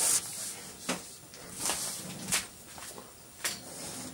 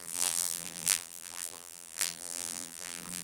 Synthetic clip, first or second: second